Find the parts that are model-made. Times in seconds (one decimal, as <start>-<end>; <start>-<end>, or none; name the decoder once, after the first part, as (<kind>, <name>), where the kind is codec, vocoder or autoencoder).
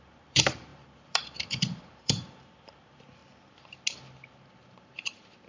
0.0-3.2 (vocoder, BigVGAN v2); 4.6-5.5